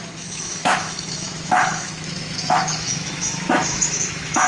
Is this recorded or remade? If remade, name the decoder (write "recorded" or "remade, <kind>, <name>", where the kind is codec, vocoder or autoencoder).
remade, autoencoder, DAC-VAE